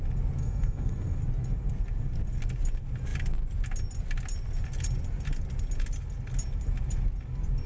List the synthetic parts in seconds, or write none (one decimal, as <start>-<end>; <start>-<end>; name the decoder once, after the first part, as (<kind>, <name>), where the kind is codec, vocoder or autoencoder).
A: 0.4-1.2 (codec, SNAC)